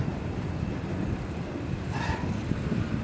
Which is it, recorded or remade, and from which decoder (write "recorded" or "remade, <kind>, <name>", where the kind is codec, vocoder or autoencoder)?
remade, vocoder, BigVGAN v2